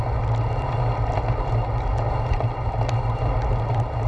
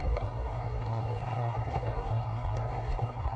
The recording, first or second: first